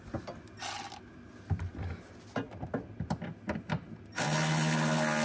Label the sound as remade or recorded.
recorded